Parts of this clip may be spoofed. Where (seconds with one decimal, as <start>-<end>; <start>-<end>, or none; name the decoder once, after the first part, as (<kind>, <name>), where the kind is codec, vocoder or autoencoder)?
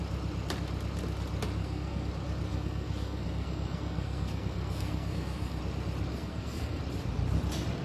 1.6-2.1 (codec, SNAC); 2.5-5.6; 6.1-6.8